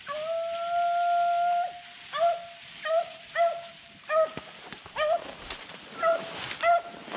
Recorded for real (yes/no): yes